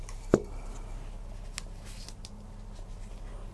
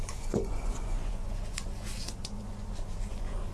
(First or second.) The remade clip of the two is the second